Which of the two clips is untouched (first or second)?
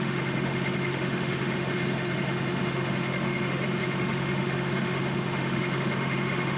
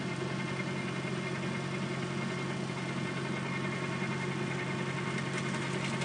second